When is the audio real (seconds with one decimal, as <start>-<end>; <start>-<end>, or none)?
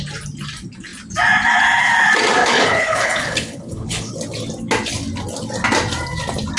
0.0-2.4; 4.1-6.6